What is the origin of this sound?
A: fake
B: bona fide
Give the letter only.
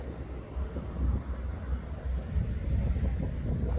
B